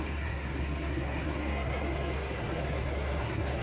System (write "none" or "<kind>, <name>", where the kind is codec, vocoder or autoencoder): codec, SNAC